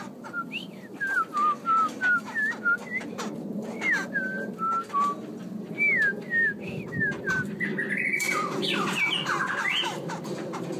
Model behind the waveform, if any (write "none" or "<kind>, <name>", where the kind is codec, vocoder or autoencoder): none